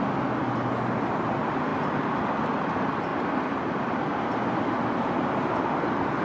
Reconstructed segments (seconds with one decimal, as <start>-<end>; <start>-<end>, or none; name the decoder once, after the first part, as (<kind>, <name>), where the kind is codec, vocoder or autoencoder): none